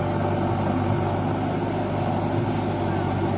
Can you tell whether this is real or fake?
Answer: real